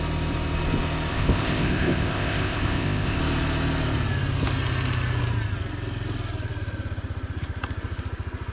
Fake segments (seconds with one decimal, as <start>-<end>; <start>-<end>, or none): 1.1-3.2